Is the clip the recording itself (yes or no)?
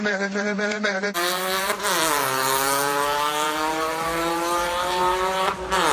no